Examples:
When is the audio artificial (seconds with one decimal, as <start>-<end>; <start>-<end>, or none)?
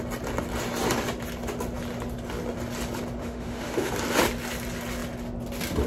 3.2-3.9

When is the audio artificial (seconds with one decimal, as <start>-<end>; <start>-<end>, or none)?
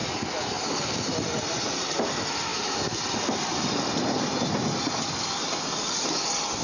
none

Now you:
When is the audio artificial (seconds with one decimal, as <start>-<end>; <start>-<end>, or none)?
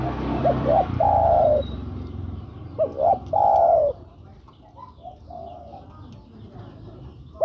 0.4-4.4